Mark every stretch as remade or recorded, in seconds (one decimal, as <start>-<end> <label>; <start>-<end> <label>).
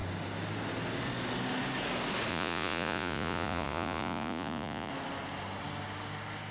0.0-2.3 recorded; 2.3-4.9 remade; 4.9-6.5 recorded